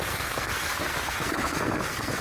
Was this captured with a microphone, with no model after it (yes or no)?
no